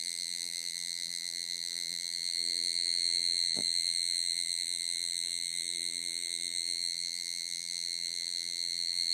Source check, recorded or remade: remade